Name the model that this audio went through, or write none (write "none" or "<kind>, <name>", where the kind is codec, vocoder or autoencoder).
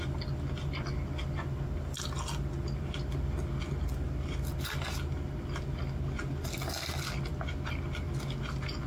none